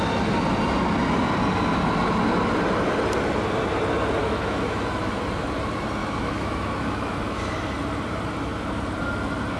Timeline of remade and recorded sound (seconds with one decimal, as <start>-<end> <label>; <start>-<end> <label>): 0.0-4.2 recorded; 4.2-5.2 remade; 5.2-6.0 recorded; 6.0-7.4 remade; 7.4-9.6 recorded